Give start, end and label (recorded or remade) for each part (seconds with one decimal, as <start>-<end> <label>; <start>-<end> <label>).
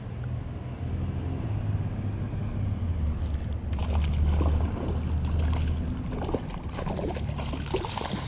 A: 0.0-8.3 recorded